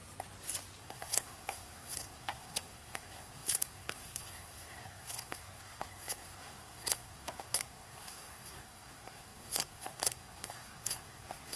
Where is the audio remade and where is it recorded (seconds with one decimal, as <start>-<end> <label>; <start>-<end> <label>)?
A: 0.0-0.8 recorded; 0.8-11.6 remade